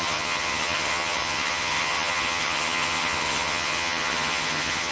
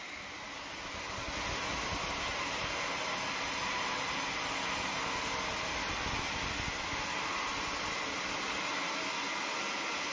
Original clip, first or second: second